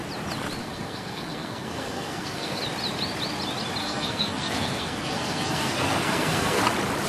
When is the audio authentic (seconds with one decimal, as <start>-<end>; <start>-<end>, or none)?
0.0-0.6; 2.6-3.8; 6.6-7.1